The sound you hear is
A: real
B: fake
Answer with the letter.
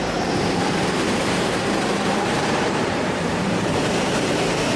B